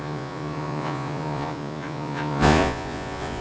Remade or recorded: remade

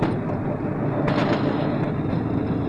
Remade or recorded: recorded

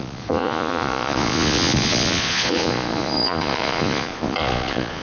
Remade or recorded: remade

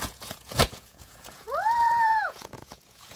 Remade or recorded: remade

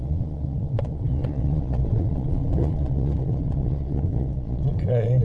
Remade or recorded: remade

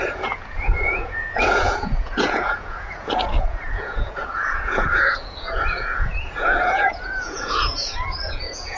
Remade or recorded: remade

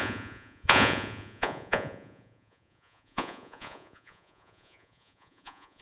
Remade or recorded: remade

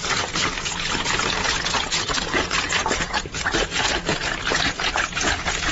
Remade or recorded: remade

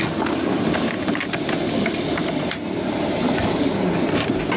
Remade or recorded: recorded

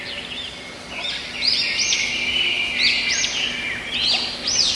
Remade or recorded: recorded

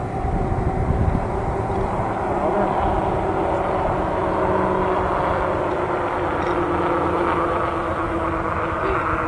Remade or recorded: recorded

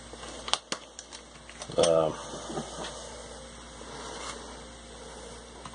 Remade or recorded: recorded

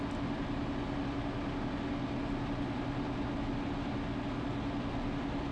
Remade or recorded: recorded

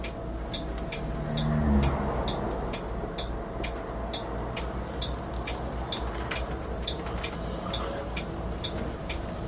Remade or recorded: recorded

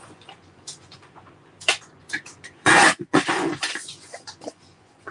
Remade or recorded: remade